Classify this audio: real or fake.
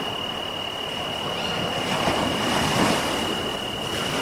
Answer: real